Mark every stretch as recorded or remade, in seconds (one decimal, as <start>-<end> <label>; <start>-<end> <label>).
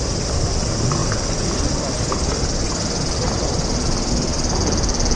0.0-5.2 recorded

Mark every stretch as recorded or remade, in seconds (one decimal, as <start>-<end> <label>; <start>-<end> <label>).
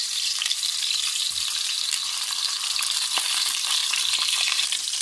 0.0-5.0 remade